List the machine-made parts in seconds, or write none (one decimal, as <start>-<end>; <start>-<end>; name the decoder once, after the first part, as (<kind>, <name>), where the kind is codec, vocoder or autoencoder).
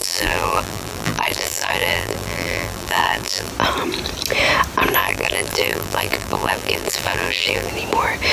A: 0.0-3.5 (vocoder, BigVGAN v2); 5.0-7.7